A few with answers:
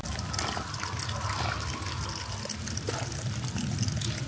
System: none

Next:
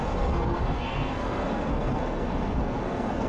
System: codec, SNAC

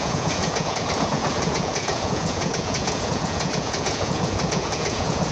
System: vocoder, Vocos